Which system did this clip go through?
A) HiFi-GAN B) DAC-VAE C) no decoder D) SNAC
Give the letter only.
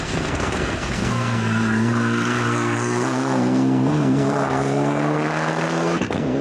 D